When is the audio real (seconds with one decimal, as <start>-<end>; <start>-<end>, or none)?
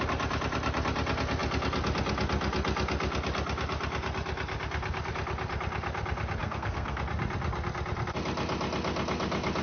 0.0-6.4; 7.0-9.6